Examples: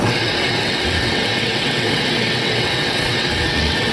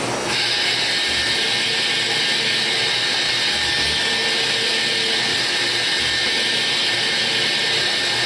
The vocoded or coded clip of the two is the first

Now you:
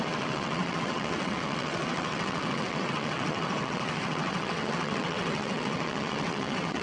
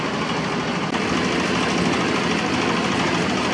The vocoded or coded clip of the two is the first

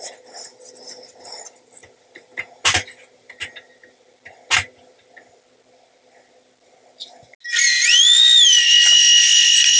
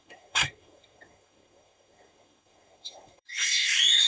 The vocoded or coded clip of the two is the second